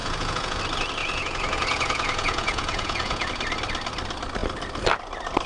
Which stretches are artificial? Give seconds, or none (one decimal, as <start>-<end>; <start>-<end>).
0.0-0.6; 1.0-3.3